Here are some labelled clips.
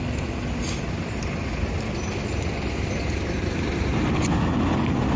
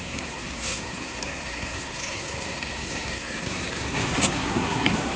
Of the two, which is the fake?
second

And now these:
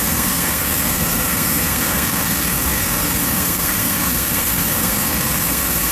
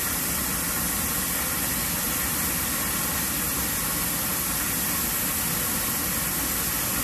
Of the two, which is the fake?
first